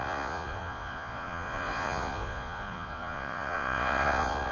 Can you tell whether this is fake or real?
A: fake